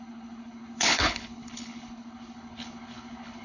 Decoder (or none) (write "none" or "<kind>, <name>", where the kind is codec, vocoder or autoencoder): codec, HILCodec